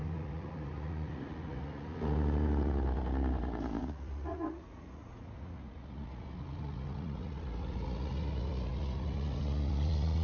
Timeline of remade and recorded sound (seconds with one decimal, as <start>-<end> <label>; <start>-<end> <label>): 0.0-10.2 remade